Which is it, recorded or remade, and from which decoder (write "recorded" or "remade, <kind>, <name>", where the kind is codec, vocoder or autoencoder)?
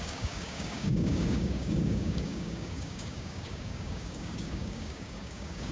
remade, codec, DAC